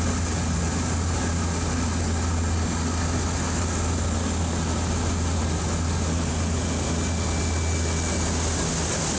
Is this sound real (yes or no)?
yes